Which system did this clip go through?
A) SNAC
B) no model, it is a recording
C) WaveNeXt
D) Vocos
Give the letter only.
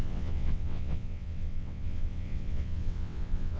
C